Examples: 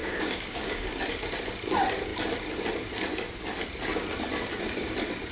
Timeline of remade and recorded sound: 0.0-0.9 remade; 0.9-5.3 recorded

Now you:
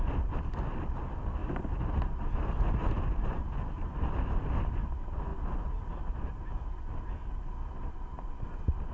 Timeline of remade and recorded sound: 0.0-1.4 recorded; 1.4-3.6 remade; 3.6-8.9 recorded

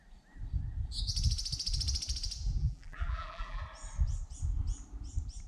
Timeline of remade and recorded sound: 0.0-2.6 recorded; 2.6-3.6 remade; 3.6-5.5 recorded

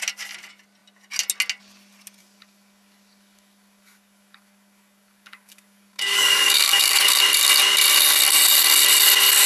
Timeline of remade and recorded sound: 0.0-2.2 recorded; 2.2-7.2 remade; 7.2-9.5 recorded

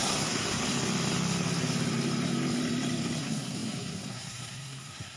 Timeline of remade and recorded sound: 0.0-0.6 remade; 0.6-3.2 recorded; 3.2-5.2 remade